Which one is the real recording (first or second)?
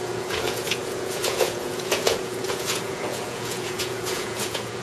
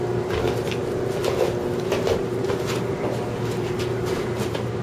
second